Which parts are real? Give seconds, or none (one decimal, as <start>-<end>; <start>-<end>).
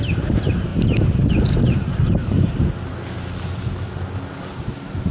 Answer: 0.0-5.1